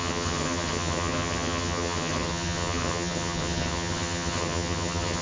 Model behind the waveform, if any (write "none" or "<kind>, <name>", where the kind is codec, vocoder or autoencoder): vocoder, HiFi-GAN